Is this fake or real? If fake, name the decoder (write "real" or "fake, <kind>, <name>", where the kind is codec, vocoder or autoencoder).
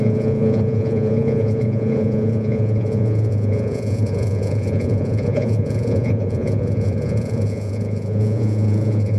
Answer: fake, vocoder, Vocos